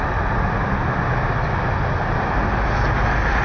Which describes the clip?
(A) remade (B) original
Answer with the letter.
B